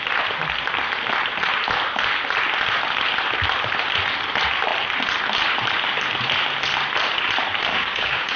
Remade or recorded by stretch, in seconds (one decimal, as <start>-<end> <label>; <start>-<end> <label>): 0.0-7.7 recorded; 7.7-8.4 remade